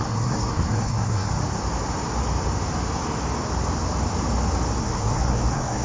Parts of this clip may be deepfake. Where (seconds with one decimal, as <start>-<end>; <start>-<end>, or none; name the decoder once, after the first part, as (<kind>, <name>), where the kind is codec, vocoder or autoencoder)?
0.0-1.3 (codec, SNAC); 4.8-5.8